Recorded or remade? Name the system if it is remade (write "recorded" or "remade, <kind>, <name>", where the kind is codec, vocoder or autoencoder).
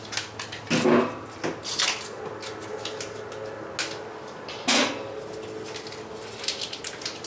recorded